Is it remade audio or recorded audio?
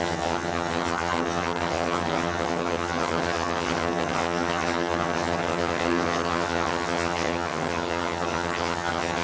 remade